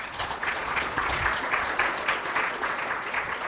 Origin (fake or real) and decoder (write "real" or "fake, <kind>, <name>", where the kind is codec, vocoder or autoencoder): fake, vocoder, Vocos